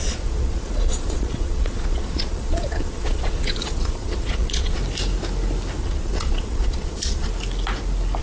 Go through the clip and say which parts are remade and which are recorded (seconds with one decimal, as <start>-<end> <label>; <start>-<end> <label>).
0.0-4.8 remade; 4.8-5.8 recorded; 5.8-7.3 remade; 7.3-8.2 recorded